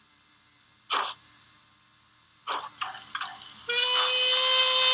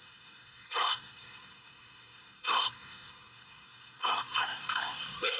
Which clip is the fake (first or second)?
second